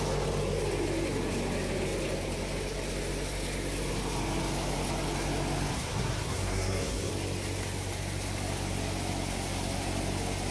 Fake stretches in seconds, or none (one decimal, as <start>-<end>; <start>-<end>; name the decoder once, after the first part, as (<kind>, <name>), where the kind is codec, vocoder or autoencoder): 5.7-7.1 (codec, SNAC)